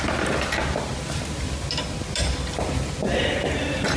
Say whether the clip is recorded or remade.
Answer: recorded